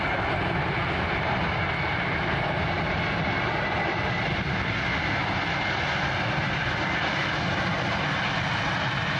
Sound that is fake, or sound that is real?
real